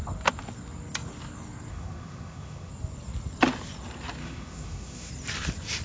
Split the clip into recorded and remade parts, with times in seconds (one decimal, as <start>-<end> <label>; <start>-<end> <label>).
0.0-1.7 recorded; 1.7-2.7 remade; 2.7-4.2 recorded; 4.2-5.1 remade; 5.1-5.8 recorded